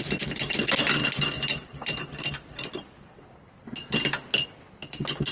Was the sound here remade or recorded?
recorded